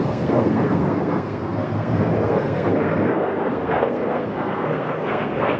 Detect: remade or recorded remade